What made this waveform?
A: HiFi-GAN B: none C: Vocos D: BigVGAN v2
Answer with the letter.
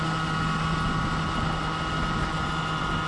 B